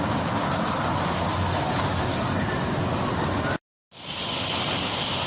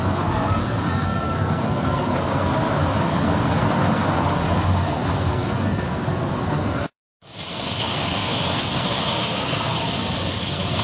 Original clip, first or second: first